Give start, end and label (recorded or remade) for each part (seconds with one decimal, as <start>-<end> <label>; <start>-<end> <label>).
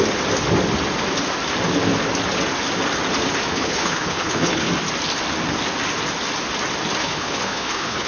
0.0-3.5 recorded; 3.5-4.7 remade; 4.7-7.0 recorded; 7.0-8.1 remade